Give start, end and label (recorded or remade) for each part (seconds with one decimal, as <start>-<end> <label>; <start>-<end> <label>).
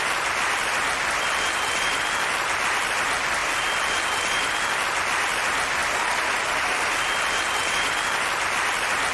0.0-9.1 recorded